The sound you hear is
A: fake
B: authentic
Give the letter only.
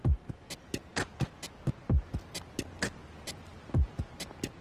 B